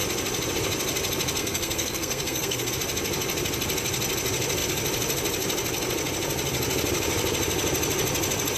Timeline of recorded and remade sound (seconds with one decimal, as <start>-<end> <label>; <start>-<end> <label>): 0.0-1.4 recorded; 1.4-2.7 remade; 2.7-8.6 recorded